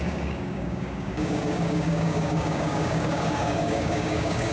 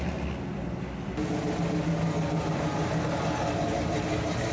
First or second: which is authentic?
second